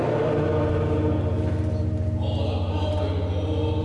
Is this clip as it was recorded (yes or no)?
yes